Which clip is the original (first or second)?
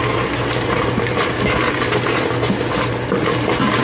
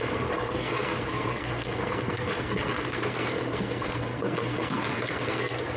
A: first